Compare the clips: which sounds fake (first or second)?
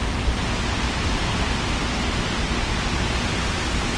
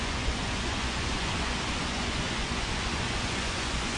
second